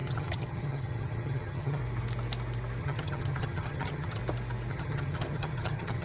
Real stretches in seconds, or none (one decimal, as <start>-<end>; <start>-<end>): 1.8-2.8; 4.2-4.7